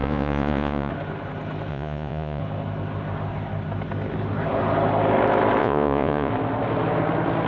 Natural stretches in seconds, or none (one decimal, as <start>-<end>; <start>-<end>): 0.9-1.7; 2.4-5.6; 6.3-7.5